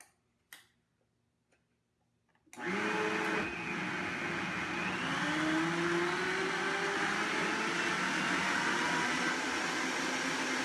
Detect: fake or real real